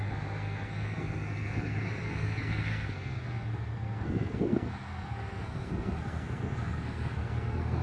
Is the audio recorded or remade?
remade